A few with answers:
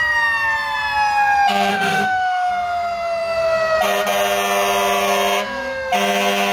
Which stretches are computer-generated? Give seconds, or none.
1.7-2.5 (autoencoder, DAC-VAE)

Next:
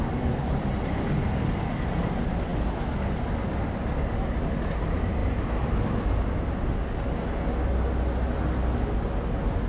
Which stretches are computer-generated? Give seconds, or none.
none